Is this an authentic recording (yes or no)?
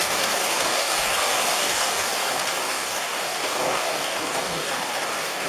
no